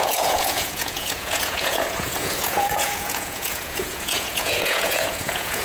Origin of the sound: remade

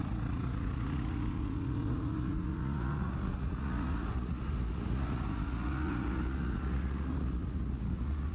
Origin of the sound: remade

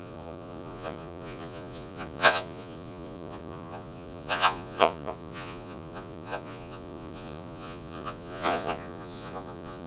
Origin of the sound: remade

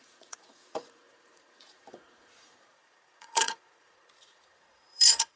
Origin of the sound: remade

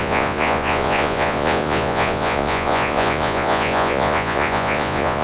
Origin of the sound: remade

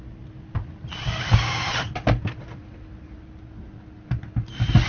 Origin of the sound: recorded